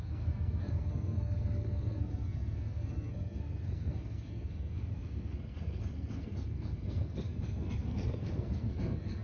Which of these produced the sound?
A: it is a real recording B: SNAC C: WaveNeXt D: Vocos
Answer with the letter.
B